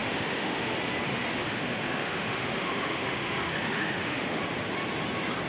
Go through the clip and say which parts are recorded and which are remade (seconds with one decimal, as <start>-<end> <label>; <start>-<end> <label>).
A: 0.0-0.7 remade; 0.7-1.1 recorded; 1.1-4.4 remade; 4.4-5.5 recorded